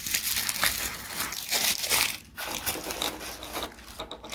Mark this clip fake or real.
real